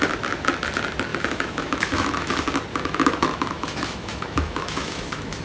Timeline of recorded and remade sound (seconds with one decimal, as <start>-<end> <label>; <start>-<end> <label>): 0.0-1.1 recorded; 1.1-2.3 remade; 2.3-2.7 recorded; 2.7-5.4 remade